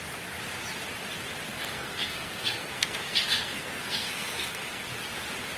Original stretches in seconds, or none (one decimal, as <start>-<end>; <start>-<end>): 0.0-1.5; 4.9-5.6